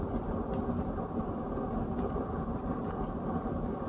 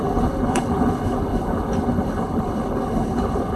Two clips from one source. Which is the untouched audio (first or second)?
first